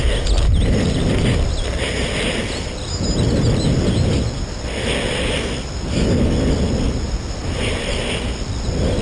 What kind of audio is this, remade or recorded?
recorded